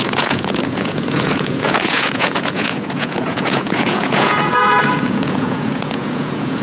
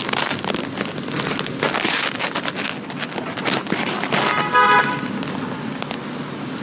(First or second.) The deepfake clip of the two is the first